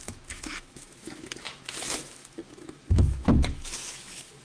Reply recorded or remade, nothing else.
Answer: remade